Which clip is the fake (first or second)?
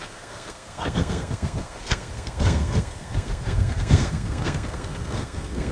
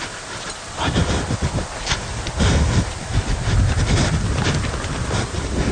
first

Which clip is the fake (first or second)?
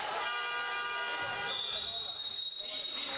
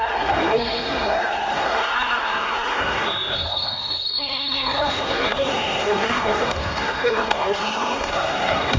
second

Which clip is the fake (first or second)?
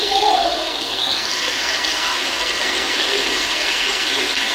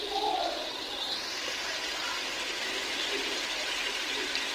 first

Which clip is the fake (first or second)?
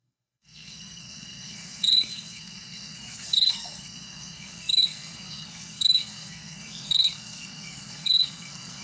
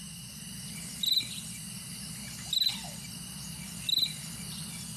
first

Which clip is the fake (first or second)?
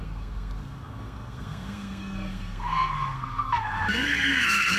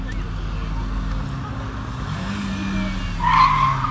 first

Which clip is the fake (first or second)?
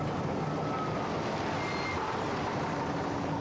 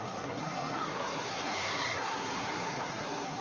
second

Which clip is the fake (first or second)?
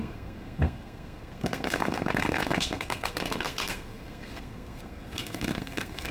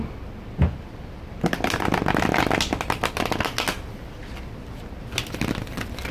first